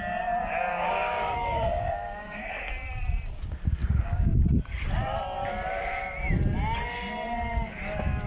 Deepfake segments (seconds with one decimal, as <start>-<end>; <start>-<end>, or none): 0.7-2.7; 3.8-4.4